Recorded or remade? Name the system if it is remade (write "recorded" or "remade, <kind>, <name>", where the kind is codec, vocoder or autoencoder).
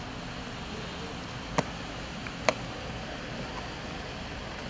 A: recorded